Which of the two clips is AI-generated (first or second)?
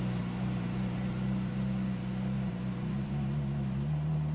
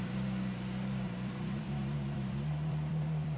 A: second